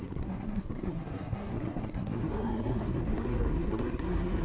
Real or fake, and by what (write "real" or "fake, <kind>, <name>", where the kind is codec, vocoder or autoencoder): fake, codec, SNAC